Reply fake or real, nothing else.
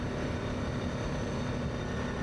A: real